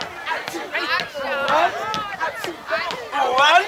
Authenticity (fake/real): real